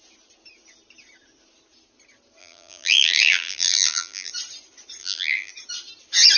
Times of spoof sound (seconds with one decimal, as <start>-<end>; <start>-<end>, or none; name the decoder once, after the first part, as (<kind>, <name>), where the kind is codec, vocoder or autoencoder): 2.4-4.3 (vocoder, BigVGAN v2); 5.0-5.5